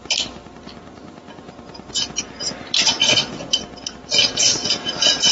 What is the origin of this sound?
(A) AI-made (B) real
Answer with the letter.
A